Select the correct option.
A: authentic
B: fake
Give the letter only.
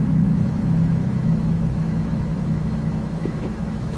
B